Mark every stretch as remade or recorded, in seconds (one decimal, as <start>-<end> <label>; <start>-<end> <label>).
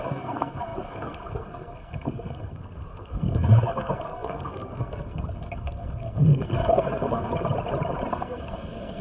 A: 0.0-7.3 remade; 7.3-8.1 recorded; 8.1-9.0 remade